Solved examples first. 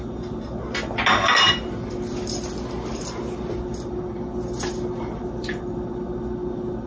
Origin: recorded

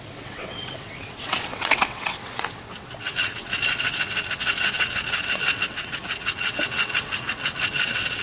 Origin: remade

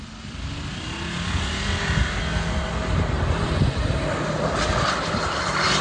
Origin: recorded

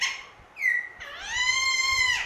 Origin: recorded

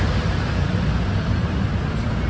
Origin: recorded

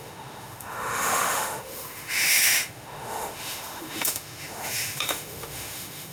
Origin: remade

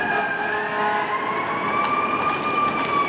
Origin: recorded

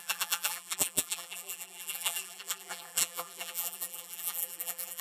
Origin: remade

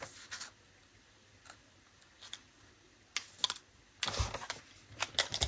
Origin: recorded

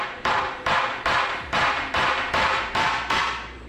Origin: remade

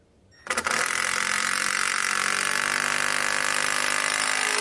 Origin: recorded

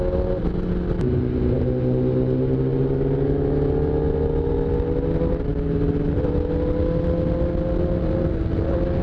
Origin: recorded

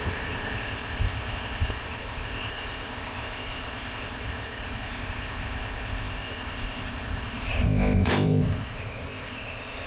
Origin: remade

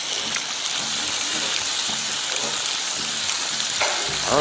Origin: recorded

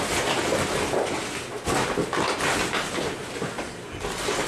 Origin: recorded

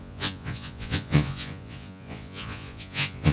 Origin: remade